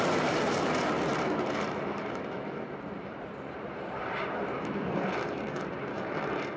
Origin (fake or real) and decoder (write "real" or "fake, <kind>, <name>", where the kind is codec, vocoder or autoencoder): fake, vocoder, BigVGAN v2